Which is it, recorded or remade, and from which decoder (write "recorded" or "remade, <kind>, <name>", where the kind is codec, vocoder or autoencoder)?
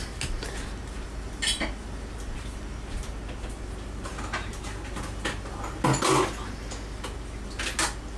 recorded